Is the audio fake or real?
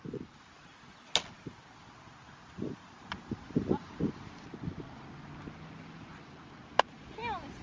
real